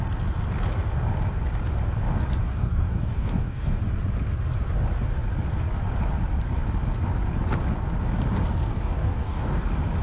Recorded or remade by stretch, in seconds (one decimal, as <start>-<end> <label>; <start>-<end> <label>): 0.0-2.4 recorded; 2.4-3.8 remade; 3.8-8.7 recorded; 8.7-9.6 remade; 9.6-10.0 recorded